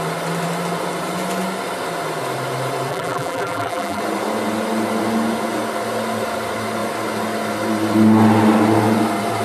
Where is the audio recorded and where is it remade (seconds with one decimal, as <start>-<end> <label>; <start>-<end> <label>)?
0.0-2.9 recorded; 2.9-4.0 remade; 4.0-9.4 recorded